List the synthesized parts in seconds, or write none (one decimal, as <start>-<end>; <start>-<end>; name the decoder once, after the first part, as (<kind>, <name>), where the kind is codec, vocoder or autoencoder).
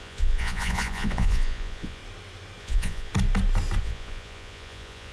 0.0-2.0 (vocoder, Vocos); 2.6-3.1; 3.8-5.1